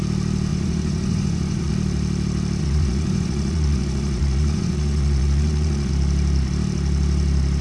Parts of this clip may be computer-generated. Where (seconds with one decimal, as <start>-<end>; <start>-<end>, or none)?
0.5-1.7; 2.6-5.9